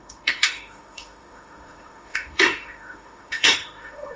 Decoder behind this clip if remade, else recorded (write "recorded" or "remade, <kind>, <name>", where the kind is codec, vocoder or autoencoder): remade, autoencoder, DAC-VAE